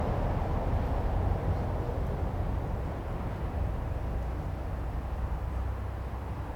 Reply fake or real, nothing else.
real